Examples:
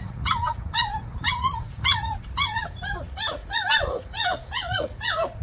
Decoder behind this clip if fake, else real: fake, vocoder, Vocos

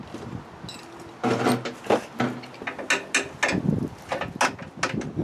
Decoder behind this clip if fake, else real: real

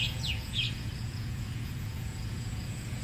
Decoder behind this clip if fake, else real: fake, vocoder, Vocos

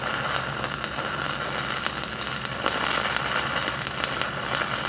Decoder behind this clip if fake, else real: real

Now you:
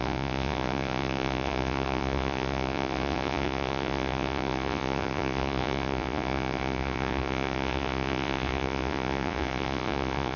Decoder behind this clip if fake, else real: fake, vocoder, Vocos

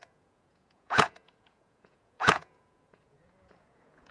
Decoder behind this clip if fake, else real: fake, vocoder, Vocos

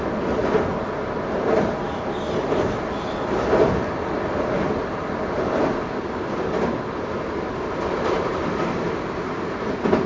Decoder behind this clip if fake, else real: real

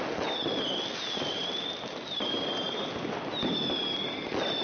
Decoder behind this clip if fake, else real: real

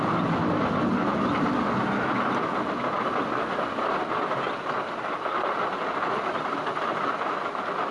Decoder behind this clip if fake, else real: real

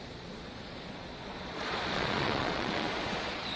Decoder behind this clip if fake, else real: fake, vocoder, Vocos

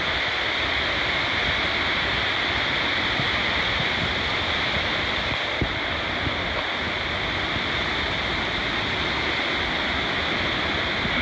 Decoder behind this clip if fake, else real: real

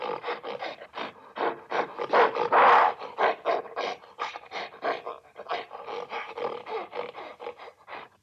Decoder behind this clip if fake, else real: real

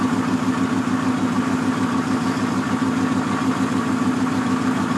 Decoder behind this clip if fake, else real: real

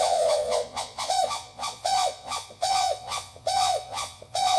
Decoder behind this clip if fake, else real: fake, vocoder, Vocos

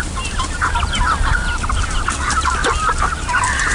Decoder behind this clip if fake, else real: real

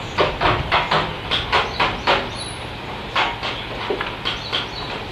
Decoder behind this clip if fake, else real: real